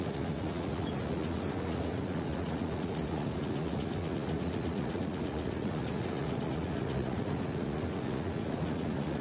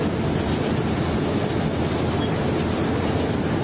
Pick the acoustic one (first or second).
second